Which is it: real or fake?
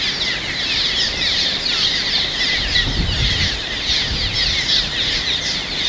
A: real